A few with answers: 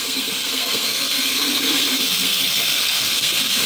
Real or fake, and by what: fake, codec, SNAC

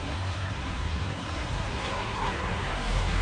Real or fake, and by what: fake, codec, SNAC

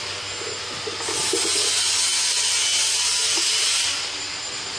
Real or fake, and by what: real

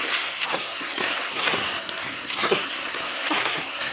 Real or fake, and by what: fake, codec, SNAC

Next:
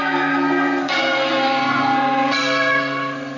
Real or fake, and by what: fake, codec, SNAC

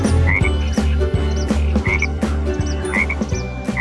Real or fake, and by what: real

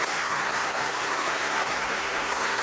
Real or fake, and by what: fake, codec, SNAC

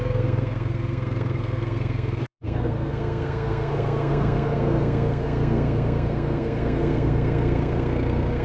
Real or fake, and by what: fake, codec, SNAC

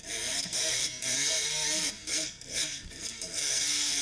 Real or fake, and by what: fake, codec, SNAC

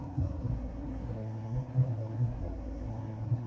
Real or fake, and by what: fake, codec, SNAC